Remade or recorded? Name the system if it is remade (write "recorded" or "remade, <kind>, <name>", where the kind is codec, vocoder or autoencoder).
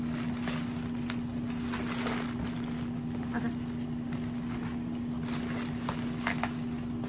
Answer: recorded